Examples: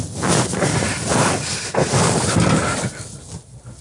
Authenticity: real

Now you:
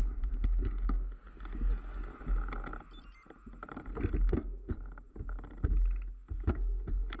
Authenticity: real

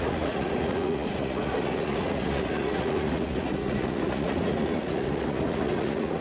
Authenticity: fake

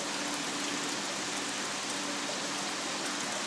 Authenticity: real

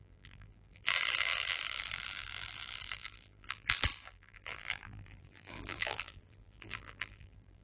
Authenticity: fake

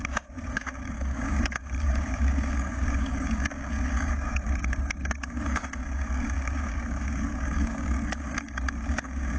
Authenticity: fake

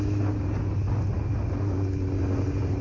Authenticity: real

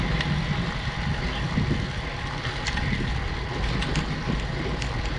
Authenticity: real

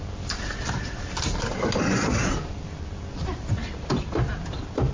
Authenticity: real